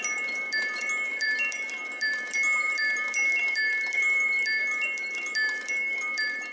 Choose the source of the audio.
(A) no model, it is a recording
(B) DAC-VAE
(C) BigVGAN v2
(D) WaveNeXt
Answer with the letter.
C